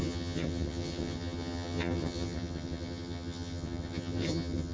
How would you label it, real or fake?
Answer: fake